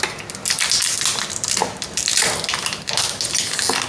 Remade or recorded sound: recorded